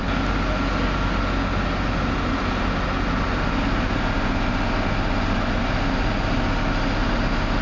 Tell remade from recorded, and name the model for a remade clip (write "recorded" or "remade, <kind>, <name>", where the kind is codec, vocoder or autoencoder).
recorded